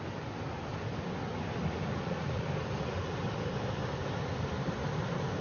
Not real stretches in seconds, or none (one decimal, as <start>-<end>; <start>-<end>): 1.9-2.4